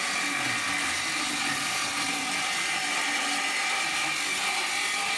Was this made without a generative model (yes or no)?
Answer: yes